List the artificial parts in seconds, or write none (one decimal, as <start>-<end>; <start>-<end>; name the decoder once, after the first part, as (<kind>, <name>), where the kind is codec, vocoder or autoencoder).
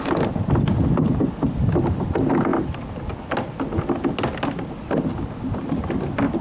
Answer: none